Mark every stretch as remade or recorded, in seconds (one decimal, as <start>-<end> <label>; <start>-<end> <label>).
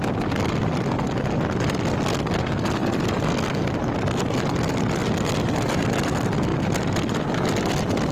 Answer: 0.0-8.1 recorded